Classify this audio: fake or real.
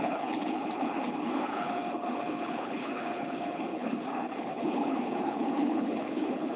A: fake